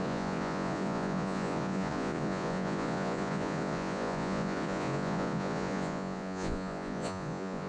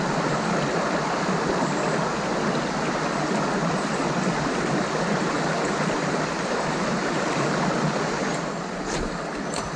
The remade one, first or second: first